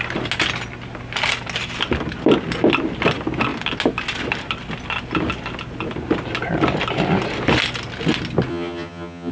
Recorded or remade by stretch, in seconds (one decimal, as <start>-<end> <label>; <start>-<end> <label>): 0.0-8.5 recorded; 8.5-9.3 remade